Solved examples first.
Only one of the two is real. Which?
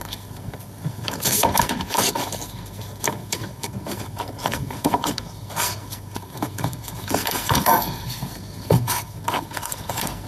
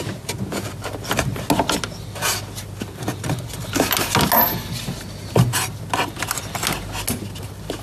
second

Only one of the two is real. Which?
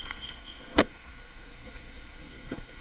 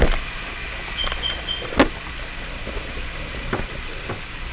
second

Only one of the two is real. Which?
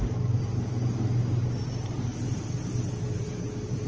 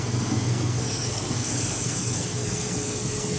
first